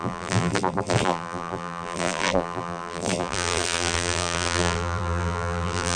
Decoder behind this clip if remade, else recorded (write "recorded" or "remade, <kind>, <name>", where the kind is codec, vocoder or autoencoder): remade, vocoder, BigVGAN v2